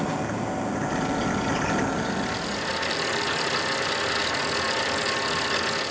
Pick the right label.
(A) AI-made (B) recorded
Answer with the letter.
B